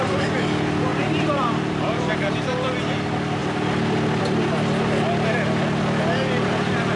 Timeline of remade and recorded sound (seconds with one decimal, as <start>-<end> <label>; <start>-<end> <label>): 0.0-0.9 recorded; 0.9-2.4 remade; 2.4-7.0 recorded